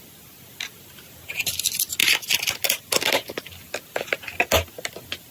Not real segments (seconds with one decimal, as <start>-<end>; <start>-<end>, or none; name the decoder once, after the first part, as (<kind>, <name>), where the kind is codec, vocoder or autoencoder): none